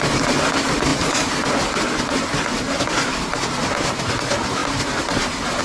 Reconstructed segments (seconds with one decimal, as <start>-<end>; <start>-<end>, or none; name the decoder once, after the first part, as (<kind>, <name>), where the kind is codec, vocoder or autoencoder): none